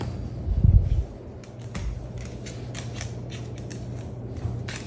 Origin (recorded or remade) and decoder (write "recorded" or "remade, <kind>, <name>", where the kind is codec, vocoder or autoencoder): recorded